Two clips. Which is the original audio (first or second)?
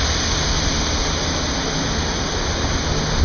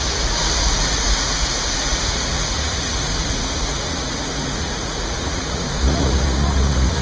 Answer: first